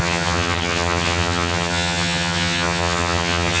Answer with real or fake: fake